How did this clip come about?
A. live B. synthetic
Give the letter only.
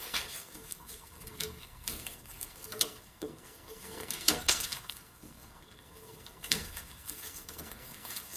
B